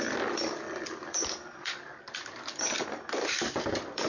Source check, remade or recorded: remade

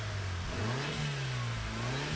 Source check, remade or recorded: recorded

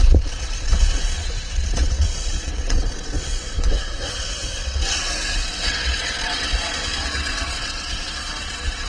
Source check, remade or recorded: remade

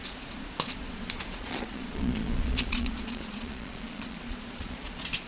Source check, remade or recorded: remade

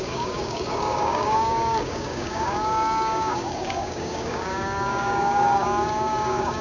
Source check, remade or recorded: remade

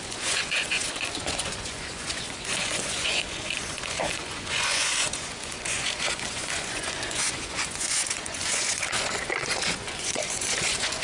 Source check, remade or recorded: remade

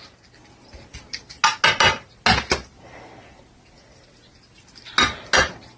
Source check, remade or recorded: recorded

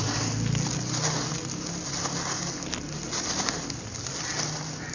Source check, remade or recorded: recorded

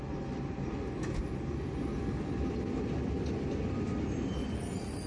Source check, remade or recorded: recorded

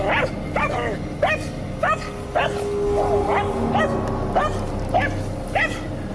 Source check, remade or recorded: recorded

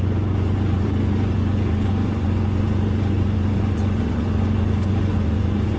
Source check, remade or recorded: remade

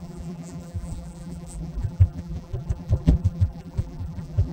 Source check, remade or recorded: remade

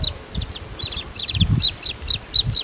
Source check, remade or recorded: recorded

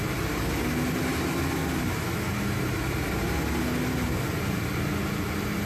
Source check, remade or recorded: recorded